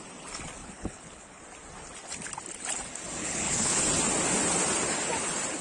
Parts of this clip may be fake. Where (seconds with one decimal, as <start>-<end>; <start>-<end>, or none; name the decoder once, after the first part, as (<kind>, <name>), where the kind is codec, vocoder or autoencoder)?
0.6-1.4 (codec, HILCodec); 3.2-3.8